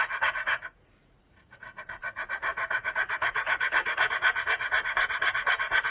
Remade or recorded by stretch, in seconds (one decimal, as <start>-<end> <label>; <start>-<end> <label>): 0.0-5.9 remade